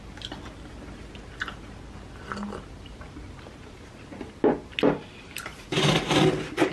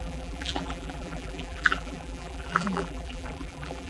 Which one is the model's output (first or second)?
second